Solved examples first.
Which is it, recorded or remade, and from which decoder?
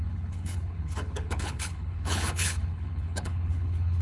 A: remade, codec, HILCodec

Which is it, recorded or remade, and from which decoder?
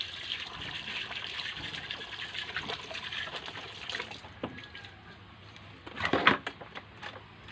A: recorded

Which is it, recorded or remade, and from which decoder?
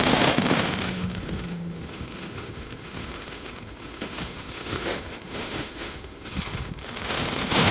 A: remade, autoencoder, DAC-VAE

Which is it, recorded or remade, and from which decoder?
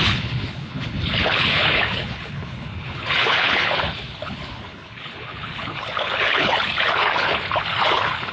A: remade, codec, HILCodec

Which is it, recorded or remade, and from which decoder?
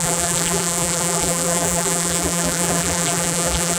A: remade, vocoder, BigVGAN v2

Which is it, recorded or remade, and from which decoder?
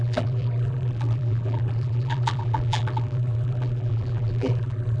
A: remade, vocoder, BigVGAN v2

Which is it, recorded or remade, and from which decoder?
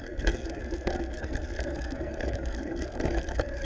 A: remade, codec, SNAC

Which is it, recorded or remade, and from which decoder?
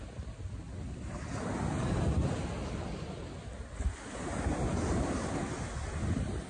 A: recorded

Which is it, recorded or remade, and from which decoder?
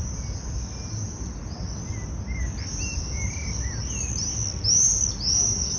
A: recorded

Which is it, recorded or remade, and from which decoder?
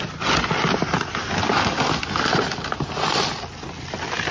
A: recorded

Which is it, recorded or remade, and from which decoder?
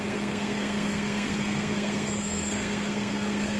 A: remade, codec, SNAC